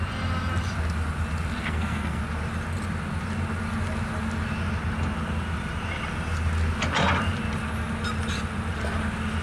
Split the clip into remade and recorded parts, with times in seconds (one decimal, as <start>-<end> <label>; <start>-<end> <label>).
0.0-1.6 recorded; 1.6-2.2 remade; 2.2-9.4 recorded